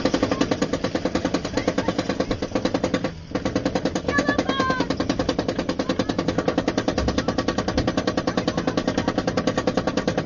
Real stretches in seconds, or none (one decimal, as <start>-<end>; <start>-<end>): 0.0-10.3